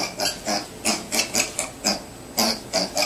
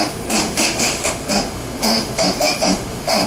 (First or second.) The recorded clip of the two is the first